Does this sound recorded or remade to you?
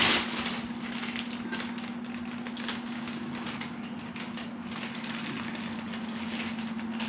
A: recorded